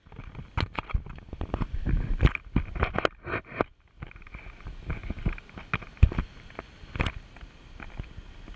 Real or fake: real